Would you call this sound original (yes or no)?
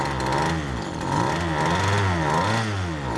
yes